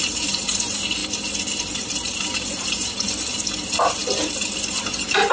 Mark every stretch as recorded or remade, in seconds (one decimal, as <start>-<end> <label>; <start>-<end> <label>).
0.0-1.0 remade; 1.0-1.6 recorded; 1.6-4.0 remade; 4.0-4.7 recorded; 4.7-5.3 remade